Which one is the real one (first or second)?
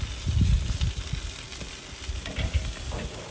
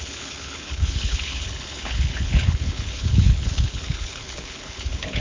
first